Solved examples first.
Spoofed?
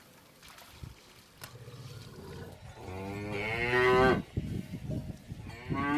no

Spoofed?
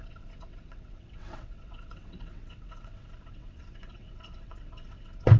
yes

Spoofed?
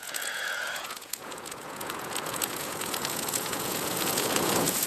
yes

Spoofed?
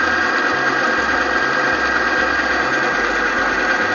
no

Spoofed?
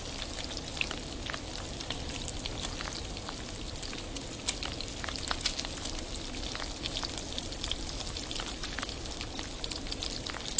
no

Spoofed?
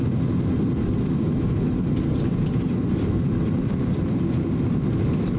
no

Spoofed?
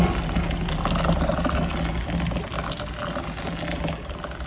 no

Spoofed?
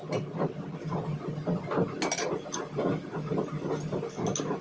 no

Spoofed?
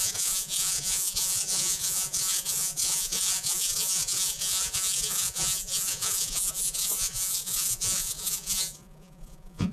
yes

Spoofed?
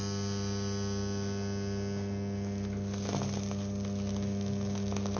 no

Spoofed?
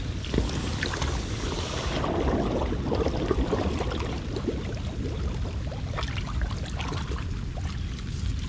no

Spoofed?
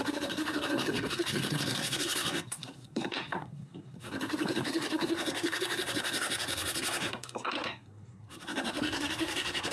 yes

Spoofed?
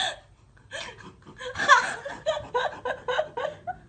no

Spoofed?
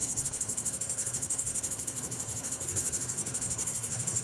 yes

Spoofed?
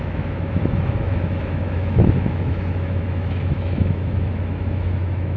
yes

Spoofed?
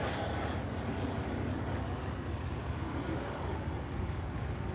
yes